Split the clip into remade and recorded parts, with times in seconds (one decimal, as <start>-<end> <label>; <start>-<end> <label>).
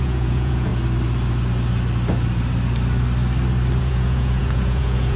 0.0-0.7 remade; 0.7-3.8 recorded; 3.8-5.2 remade